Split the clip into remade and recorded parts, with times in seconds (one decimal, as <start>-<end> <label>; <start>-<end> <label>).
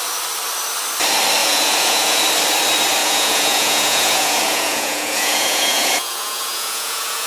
0.0-1.4 recorded; 1.4-2.2 remade; 2.2-3.0 recorded; 3.0-7.3 remade